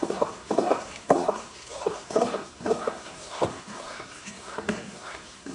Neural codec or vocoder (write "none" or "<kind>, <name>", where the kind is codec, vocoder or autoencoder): codec, SNAC